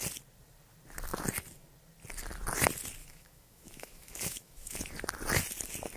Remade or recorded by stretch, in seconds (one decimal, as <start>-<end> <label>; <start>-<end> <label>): 0.0-3.0 recorded; 3.0-4.9 remade; 4.9-6.0 recorded